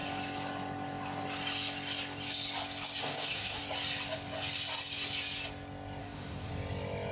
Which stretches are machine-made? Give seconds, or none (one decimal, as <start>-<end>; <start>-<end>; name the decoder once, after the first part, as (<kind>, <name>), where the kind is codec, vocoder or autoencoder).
3.0-3.6 (codec, DAC); 6.0-6.5